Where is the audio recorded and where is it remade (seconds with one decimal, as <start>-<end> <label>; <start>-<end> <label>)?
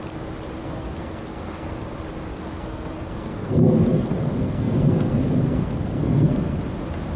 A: 0.0-0.6 recorded; 0.6-1.9 remade; 1.9-2.3 recorded; 2.3-6.6 remade; 6.6-7.2 recorded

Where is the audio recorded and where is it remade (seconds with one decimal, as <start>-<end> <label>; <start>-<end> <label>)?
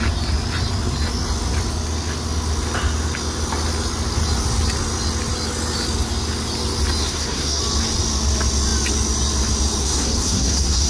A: 0.0-7.0 recorded; 7.0-7.6 remade; 7.6-9.8 recorded; 9.8-10.9 remade